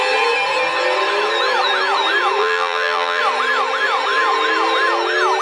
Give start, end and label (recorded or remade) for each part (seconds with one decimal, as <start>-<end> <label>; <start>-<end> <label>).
0.0-2.4 recorded; 2.4-3.2 remade; 3.2-5.4 recorded